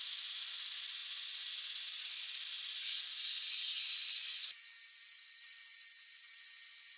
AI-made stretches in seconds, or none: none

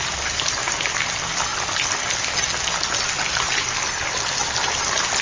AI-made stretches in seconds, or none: none

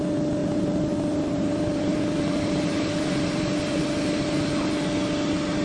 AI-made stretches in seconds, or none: 0.4-3.8 (vocoder, BigVGAN v2)